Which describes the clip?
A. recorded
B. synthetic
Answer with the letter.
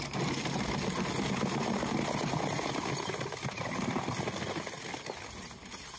A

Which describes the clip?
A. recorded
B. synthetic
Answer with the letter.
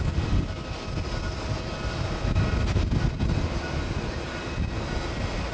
A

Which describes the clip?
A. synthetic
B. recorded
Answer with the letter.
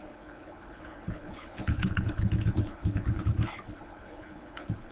A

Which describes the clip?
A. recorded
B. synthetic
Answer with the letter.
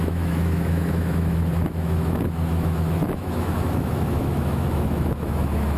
B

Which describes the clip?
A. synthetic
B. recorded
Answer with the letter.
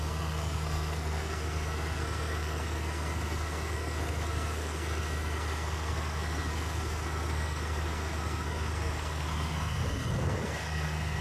A